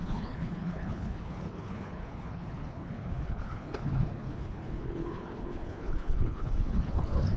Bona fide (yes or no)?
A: no